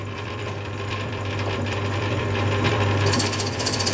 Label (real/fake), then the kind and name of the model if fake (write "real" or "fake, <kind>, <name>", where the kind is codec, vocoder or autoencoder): fake, vocoder, BigVGAN v2